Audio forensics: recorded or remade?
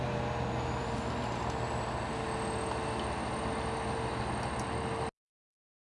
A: recorded